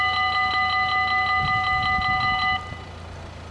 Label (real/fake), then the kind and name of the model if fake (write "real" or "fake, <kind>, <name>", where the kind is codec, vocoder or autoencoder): real